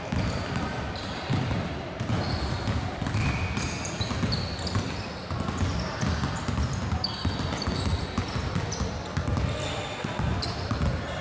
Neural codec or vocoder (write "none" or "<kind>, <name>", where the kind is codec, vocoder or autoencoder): none